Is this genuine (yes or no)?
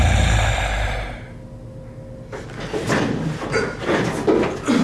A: yes